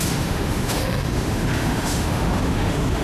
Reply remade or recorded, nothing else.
remade